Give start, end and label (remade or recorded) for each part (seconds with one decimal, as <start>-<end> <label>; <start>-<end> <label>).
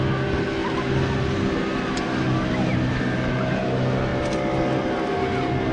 0.0-5.7 recorded